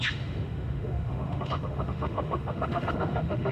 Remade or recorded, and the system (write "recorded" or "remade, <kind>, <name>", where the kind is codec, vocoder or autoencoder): remade, autoencoder, DAC-VAE